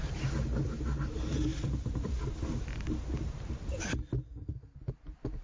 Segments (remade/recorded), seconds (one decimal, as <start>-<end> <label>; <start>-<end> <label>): 0.0-1.5 recorded; 1.5-2.3 remade; 2.3-5.4 recorded